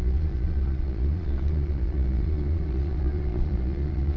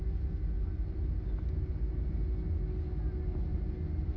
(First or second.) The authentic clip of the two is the second